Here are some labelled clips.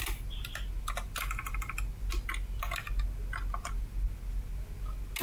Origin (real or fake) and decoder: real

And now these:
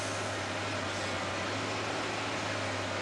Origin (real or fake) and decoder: real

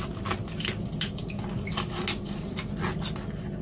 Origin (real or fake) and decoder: real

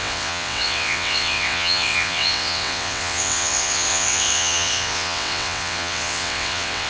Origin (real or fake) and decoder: fake, vocoder, WaveNeXt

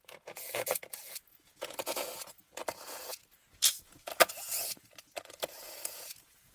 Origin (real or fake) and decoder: fake, vocoder, Vocos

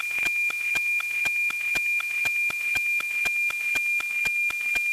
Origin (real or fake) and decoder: real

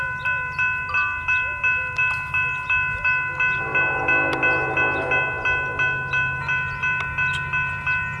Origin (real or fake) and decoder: real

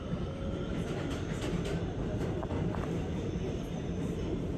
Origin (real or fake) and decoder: real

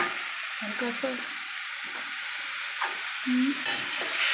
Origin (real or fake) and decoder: real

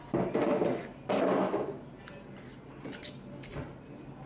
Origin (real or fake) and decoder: real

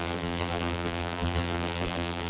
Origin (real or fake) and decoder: fake, vocoder, BigVGAN v2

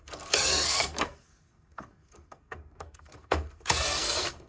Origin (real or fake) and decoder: fake, codec, SNAC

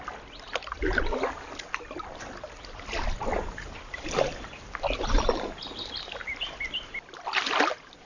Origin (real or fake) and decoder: real